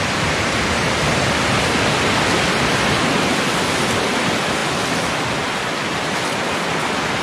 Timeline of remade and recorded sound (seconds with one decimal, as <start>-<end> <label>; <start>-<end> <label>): 0.0-7.2 recorded